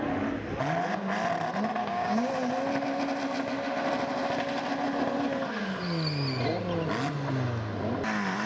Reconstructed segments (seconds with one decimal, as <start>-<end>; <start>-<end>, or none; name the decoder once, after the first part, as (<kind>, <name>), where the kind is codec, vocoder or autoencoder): 1.8-2.3 (codec, DAC)